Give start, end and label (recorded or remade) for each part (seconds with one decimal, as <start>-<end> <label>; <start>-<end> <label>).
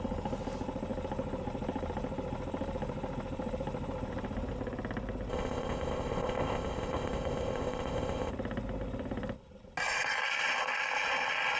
0.0-5.3 recorded; 5.3-8.3 remade; 8.3-11.6 recorded